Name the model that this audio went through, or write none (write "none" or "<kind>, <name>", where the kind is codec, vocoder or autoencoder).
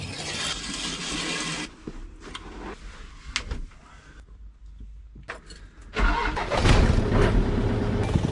none